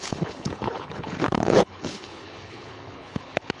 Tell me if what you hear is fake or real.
fake